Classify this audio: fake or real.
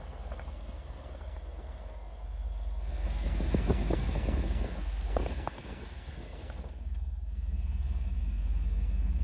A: fake